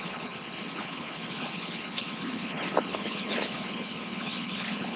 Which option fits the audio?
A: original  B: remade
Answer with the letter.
B